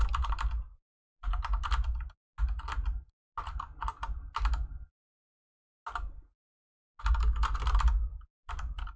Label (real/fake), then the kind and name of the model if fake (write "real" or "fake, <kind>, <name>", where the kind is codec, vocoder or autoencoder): real